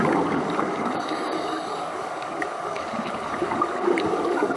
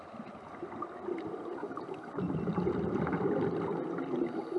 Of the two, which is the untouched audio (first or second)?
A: second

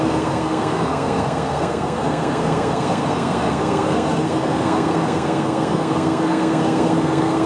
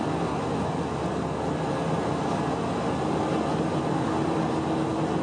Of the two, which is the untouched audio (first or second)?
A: second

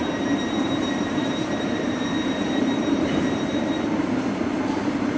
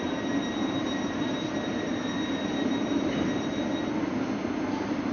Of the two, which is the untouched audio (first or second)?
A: second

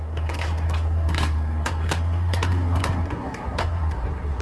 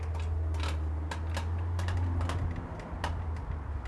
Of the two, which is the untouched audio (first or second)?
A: second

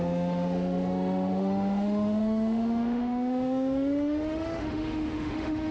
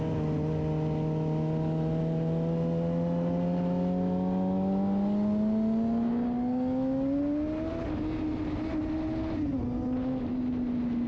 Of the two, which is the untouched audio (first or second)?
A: second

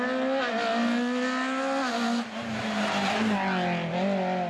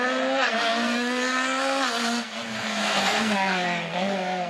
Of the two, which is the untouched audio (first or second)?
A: first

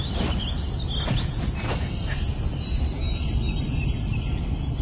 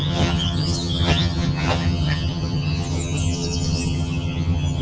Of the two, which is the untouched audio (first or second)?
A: first